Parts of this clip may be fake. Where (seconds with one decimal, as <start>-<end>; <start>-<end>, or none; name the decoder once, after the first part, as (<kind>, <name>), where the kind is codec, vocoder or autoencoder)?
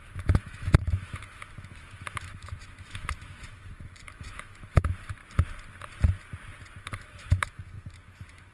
0.0-5.2 (autoencoder, DAC-VAE); 6.8-8.5